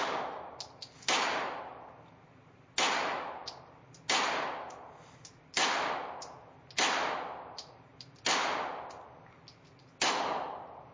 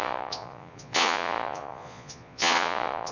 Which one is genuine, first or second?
first